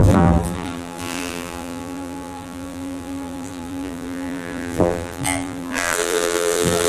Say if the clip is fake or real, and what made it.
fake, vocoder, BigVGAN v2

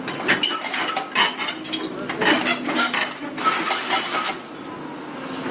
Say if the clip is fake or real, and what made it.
real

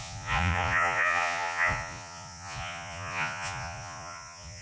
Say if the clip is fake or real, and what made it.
fake, vocoder, Vocos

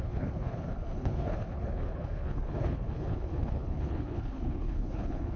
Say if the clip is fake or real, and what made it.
fake, codec, HILCodec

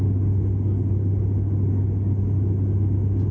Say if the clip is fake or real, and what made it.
real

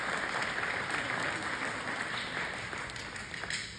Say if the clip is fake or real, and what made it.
fake, vocoder, BigVGAN v2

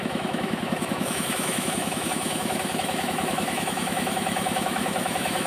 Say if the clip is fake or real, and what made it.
fake, autoencoder, DAC-VAE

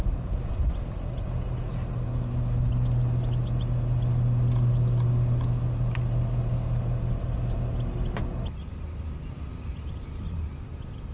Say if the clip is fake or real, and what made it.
real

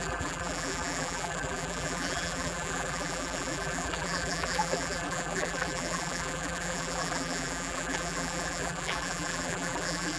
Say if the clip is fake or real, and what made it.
fake, vocoder, BigVGAN v2